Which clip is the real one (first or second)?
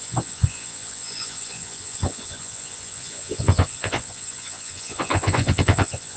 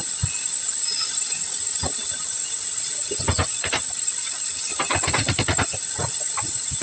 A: second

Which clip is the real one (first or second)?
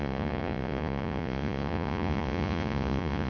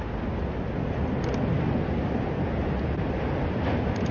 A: second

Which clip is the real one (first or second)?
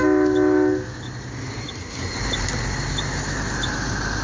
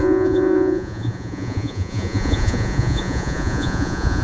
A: first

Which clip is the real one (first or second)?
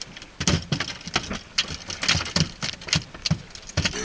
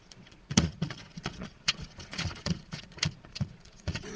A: first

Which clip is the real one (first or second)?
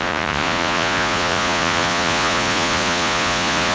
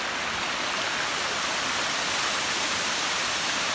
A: second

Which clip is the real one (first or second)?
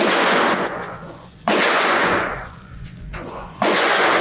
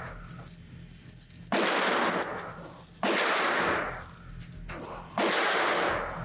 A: second